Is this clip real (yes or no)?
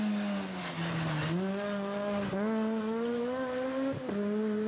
yes